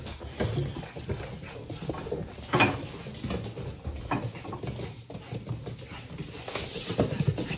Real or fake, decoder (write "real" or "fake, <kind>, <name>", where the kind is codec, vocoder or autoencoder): real